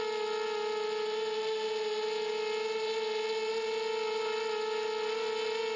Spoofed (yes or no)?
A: no